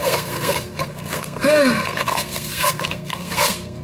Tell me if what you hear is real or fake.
fake